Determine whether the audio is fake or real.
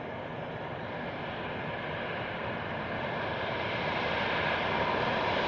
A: real